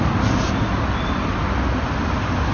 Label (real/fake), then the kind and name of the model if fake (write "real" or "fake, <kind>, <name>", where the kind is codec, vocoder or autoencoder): real